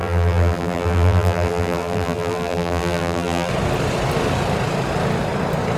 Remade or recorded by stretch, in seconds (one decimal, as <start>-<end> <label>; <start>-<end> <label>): 0.0-3.5 remade; 3.5-5.8 recorded